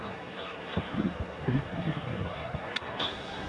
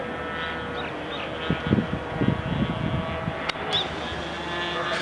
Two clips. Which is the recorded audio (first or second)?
second